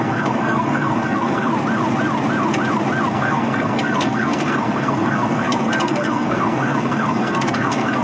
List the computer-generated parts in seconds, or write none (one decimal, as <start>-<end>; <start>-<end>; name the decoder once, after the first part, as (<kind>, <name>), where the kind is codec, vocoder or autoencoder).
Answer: 0.0-1.5 (codec, SNAC); 3.1-8.0

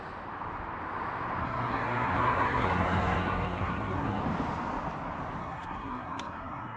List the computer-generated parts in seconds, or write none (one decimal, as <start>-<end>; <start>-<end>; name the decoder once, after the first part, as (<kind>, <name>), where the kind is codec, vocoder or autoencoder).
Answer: 1.4-4.2 (codec, SNAC); 5.4-6.8

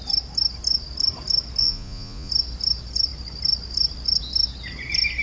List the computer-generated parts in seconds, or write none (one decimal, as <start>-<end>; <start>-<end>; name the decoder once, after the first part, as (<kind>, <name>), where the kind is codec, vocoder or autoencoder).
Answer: 1.6-2.3 (vocoder, Vocos)

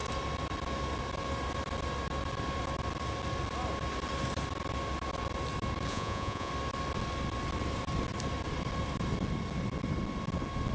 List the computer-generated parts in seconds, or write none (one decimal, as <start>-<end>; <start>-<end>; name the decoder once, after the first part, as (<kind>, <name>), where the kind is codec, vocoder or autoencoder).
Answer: 5.9-6.5 (vocoder, Vocos)

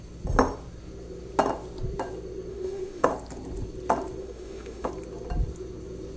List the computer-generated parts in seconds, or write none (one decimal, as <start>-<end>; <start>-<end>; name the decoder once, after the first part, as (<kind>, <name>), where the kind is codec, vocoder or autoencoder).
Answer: 2.5-3.1 (autoencoder, DAC-VAE); 4.2-4.9

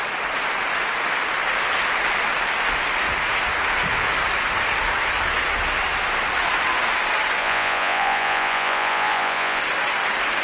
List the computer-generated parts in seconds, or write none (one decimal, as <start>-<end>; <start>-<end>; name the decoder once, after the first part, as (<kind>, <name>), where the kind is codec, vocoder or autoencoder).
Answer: 7.4-9.6 (vocoder, Vocos)

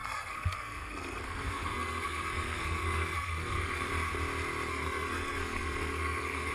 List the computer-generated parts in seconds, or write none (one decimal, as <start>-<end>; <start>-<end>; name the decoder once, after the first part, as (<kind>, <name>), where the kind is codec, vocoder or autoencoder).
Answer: 0.0-3.9 (codec, SNAC); 4.7-6.5

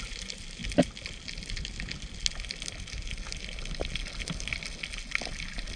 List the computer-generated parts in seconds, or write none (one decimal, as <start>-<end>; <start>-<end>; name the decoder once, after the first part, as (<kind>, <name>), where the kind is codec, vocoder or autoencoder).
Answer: none